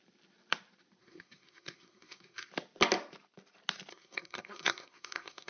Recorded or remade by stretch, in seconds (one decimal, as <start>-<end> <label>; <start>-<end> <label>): 0.0-1.0 recorded; 1.0-2.5 remade; 2.5-3.9 recorded; 3.9-5.5 remade